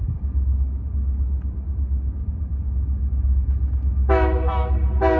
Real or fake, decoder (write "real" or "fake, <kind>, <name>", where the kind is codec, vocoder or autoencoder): real